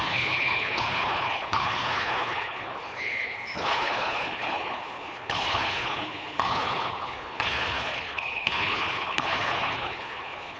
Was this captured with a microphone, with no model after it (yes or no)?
no